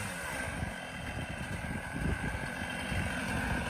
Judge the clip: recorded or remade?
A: recorded